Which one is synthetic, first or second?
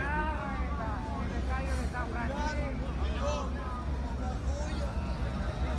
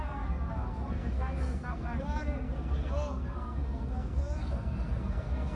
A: second